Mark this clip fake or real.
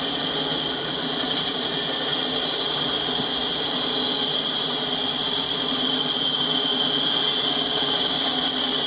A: real